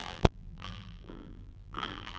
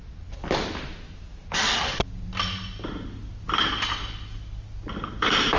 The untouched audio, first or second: second